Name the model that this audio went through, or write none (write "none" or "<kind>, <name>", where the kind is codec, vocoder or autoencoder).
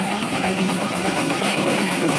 codec, SNAC